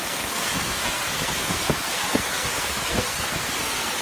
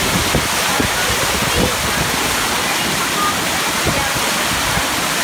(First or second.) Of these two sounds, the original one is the second